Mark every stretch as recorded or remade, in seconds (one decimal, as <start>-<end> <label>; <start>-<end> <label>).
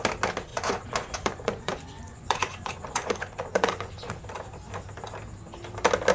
0.0-0.5 recorded; 0.5-4.2 remade; 4.2-6.1 recorded